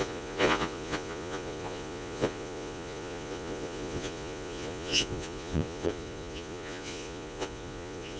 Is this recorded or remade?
remade